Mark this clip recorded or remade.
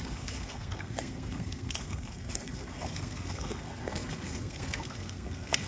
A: remade